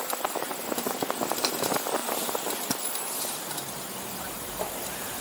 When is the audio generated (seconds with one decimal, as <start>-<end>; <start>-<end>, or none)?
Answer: none